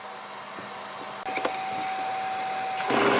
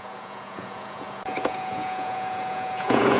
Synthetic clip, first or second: second